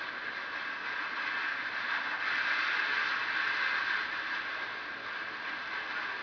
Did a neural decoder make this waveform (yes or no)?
no